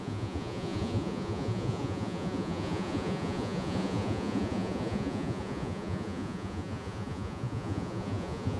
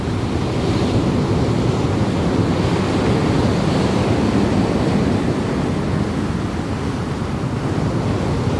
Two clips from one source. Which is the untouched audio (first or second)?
second